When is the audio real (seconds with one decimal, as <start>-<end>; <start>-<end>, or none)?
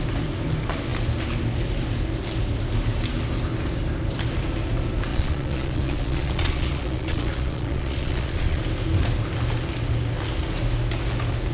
0.0-5.1; 8.6-11.5